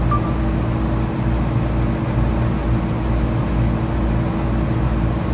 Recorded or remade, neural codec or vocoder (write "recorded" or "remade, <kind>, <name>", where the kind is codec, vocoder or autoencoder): recorded